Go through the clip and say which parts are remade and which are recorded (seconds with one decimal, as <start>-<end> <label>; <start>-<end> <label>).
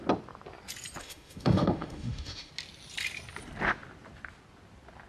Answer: 0.0-1.0 recorded; 1.0-2.5 remade; 2.5-5.1 recorded